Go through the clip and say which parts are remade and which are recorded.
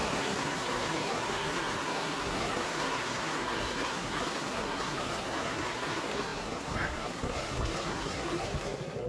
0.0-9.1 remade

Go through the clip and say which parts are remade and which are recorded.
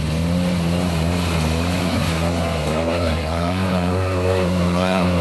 0.0-1.8 recorded; 1.8-5.2 remade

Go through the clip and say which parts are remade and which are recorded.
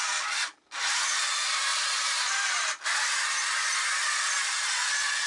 0.0-5.3 recorded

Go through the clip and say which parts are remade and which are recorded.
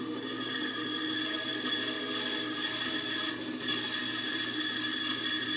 0.0-5.6 recorded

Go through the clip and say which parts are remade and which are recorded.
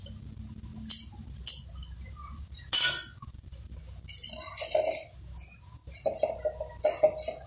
0.0-7.5 recorded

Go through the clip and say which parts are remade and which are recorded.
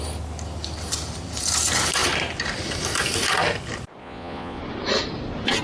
0.0-4.0 recorded; 4.0-4.6 remade; 4.6-5.6 recorded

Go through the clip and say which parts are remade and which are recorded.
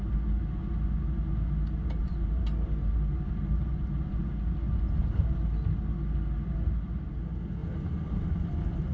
0.0-2.0 recorded; 2.0-4.3 remade; 4.3-7.6 recorded; 7.6-8.3 remade; 8.3-8.9 recorded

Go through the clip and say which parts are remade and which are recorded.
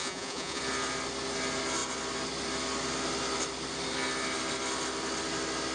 0.0-0.6 remade; 0.6-5.7 recorded